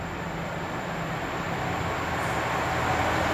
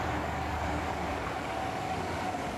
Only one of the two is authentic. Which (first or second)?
first